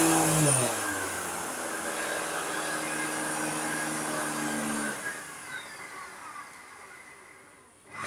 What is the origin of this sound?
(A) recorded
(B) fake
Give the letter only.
A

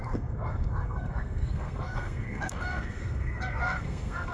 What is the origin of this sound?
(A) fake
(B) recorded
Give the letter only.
A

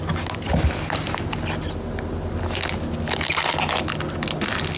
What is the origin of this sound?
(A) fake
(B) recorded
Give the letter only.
B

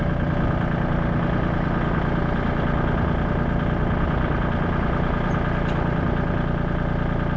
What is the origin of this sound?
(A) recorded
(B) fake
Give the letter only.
A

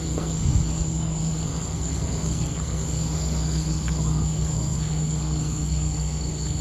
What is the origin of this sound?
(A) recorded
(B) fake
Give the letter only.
B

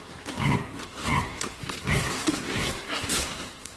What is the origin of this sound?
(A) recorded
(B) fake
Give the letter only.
B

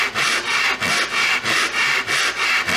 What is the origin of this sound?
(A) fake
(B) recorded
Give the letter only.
B